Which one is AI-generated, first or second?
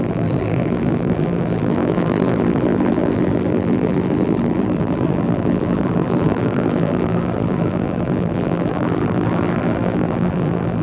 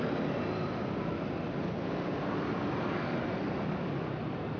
first